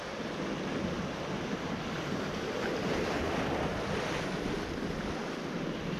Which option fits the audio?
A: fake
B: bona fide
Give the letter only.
B